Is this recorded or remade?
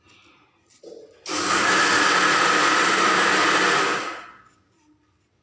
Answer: recorded